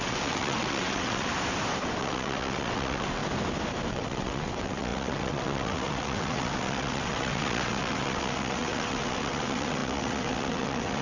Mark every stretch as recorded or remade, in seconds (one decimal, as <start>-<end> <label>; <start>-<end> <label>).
0.0-1.3 remade; 1.3-2.0 recorded; 2.0-3.2 remade; 3.2-3.9 recorded; 3.9-11.0 remade